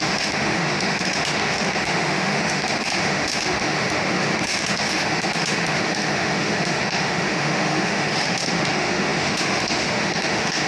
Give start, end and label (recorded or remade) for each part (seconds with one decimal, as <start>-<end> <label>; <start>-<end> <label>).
0.0-10.7 remade